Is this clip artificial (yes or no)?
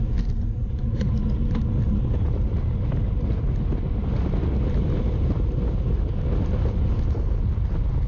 no